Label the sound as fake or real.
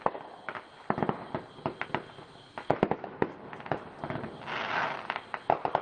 real